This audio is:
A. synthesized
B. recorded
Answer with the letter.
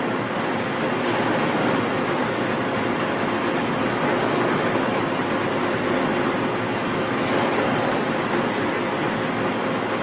B